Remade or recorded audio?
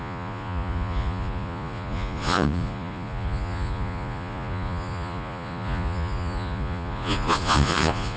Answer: remade